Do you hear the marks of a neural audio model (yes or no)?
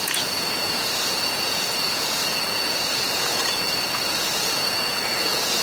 yes